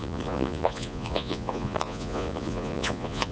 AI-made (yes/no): yes